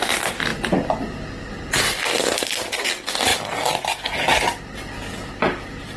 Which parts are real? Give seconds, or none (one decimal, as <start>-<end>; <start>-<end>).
0.0-6.0